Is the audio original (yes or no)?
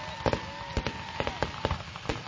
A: yes